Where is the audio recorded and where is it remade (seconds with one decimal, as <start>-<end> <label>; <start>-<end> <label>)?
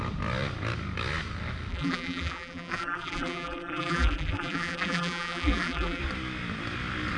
0.0-1.7 recorded; 1.7-6.0 remade; 6.0-7.2 recorded